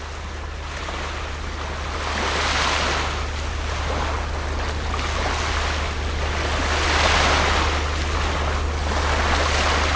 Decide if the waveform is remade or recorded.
recorded